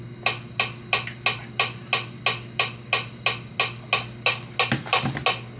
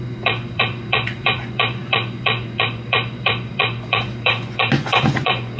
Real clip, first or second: first